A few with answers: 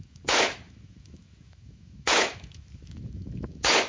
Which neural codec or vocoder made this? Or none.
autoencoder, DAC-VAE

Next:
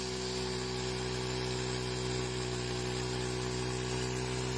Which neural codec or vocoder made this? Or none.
none